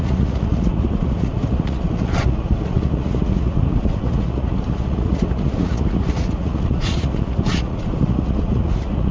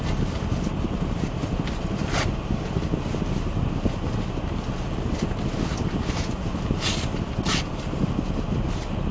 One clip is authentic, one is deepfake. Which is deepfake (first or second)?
first